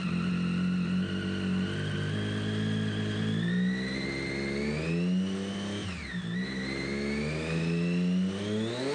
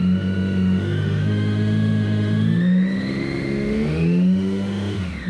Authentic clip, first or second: first